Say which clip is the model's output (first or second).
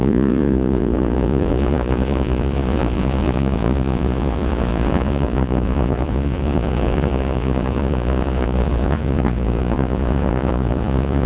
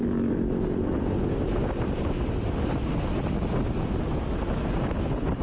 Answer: first